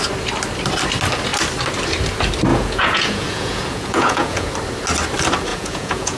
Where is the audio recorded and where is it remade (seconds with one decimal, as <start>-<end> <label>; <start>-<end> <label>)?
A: 0.0-2.5 recorded; 2.5-4.5 remade; 4.5-5.5 recorded; 5.5-6.2 remade